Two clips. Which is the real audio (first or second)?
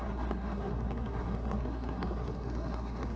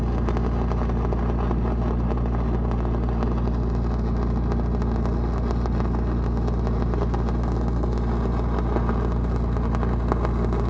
second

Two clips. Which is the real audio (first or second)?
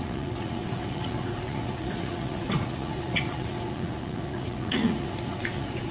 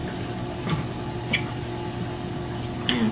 second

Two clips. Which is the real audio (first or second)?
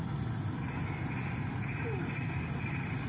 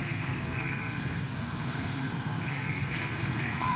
first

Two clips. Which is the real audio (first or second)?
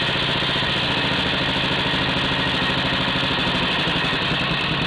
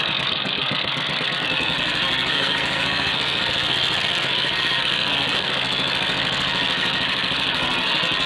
first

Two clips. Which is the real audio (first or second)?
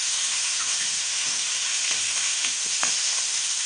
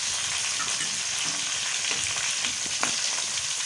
second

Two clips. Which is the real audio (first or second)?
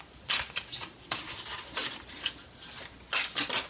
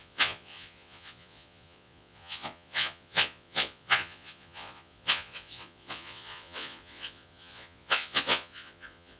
first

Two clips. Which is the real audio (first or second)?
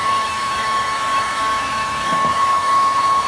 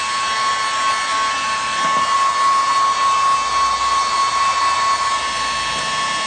second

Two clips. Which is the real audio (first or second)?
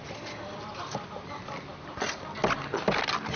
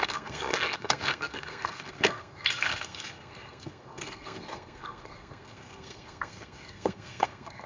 first